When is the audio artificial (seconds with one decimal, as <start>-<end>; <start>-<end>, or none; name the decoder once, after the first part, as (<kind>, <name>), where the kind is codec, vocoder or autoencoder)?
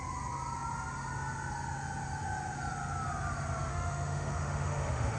3.7-5.2 (autoencoder, DAC-VAE)